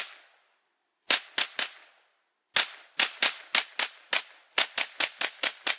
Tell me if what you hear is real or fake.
real